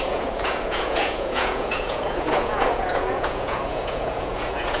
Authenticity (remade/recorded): remade